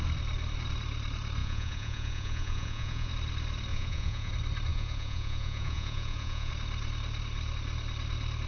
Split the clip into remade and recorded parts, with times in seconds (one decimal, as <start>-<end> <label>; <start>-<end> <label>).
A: 0.0-1.4 recorded; 1.4-3.1 remade; 3.1-3.7 recorded; 3.7-4.3 remade; 4.3-4.7 recorded; 4.7-6.5 remade; 6.5-8.5 recorded